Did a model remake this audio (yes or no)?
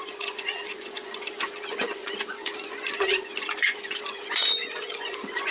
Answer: yes